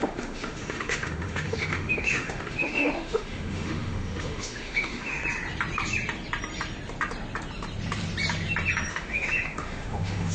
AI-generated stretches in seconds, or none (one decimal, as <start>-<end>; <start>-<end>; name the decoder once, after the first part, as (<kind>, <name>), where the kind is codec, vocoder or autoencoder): 0.0-5.2 (autoencoder, DAC-VAE); 8.9-10.3